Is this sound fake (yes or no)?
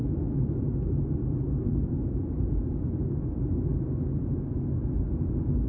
no